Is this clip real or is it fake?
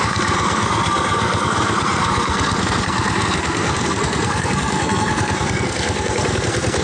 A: fake